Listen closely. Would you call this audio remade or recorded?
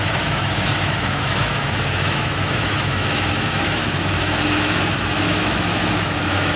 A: remade